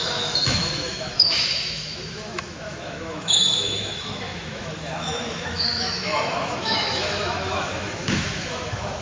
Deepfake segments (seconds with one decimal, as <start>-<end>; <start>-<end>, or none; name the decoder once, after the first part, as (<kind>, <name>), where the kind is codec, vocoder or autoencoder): 0.0-9.0 (autoencoder, DAC-VAE)